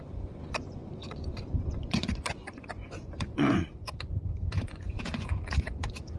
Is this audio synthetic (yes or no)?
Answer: yes